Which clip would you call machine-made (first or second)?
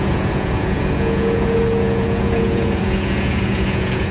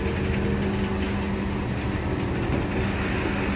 first